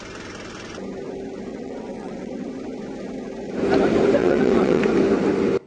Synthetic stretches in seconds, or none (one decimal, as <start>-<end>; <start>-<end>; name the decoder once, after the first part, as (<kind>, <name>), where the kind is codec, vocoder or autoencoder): 1.5-2.5 (vocoder, WaveNeXt); 4.2-4.8